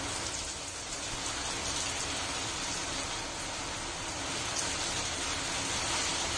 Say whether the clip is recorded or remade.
recorded